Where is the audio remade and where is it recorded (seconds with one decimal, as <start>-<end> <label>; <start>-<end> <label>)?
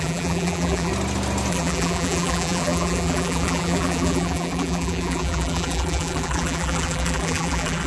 0.0-0.9 remade; 0.9-1.5 recorded; 1.5-7.9 remade